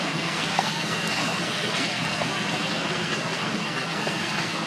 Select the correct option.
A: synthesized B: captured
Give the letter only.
A